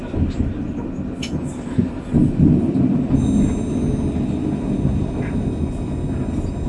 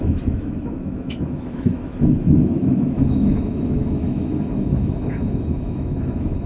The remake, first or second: second